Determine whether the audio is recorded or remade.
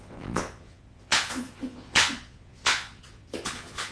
remade